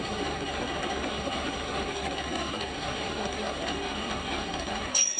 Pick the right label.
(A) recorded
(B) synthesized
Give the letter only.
B